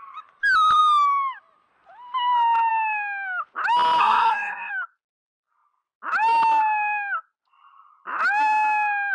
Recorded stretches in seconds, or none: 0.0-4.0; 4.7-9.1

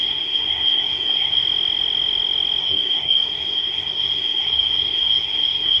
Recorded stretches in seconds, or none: 1.4-2.6

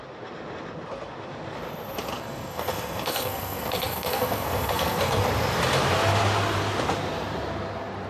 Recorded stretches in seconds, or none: 0.0-2.1; 5.2-8.1

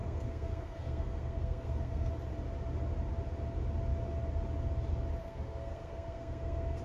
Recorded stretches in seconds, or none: 2.1-5.2

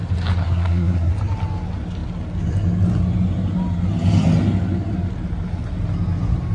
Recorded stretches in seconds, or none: 0.0-0.4; 1.1-6.5

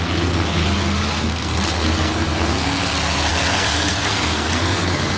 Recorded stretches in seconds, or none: 0.6-1.2